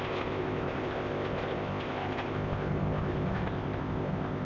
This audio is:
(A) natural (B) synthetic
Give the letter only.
B